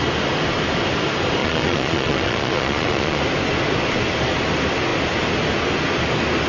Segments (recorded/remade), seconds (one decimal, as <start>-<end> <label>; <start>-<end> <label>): 0.0-1.4 recorded; 1.4-3.2 remade; 3.2-6.5 recorded